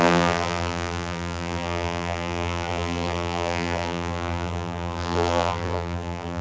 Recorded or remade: remade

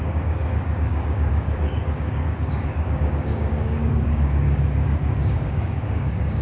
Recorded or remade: remade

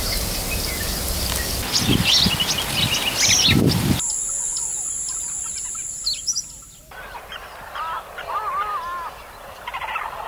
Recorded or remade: recorded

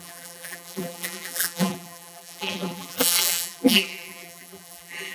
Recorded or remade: remade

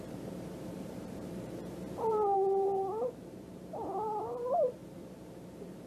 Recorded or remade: remade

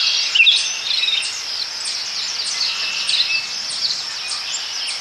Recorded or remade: recorded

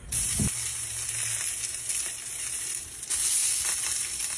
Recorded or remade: recorded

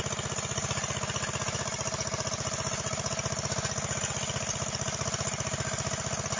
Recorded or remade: recorded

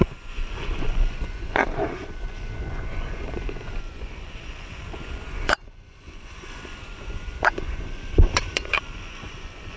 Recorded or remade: remade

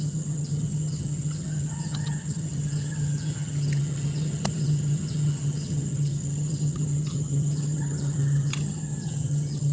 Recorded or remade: remade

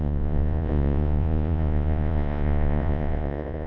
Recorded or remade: remade